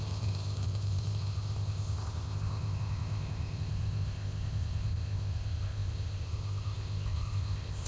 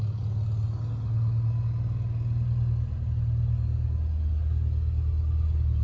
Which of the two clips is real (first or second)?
second